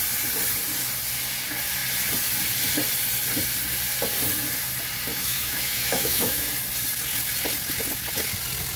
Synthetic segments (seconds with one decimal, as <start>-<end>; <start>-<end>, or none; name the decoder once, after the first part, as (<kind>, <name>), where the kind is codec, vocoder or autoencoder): 5.1-6.5 (autoencoder, DAC-VAE)